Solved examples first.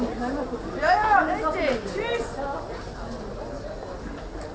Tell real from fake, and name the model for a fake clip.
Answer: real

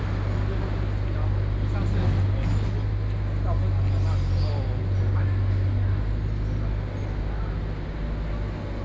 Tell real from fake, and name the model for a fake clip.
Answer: real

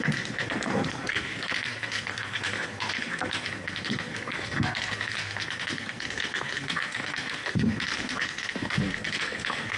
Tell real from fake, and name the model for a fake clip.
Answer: fake, codec, SNAC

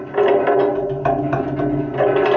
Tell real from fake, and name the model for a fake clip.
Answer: real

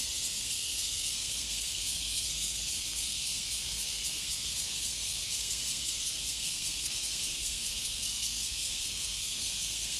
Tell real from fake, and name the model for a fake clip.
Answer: fake, codec, SNAC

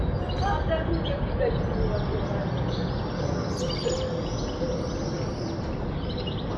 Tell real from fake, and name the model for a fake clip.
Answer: real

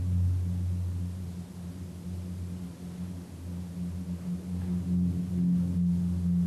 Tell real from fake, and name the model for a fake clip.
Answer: real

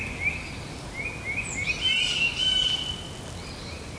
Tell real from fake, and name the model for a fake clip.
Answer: real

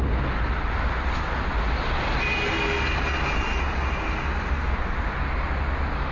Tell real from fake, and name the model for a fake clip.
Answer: real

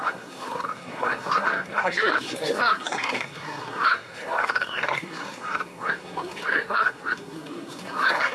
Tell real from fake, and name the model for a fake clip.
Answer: fake, codec, SNAC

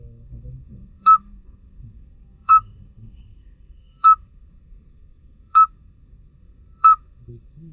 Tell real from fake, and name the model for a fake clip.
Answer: fake, codec, SNAC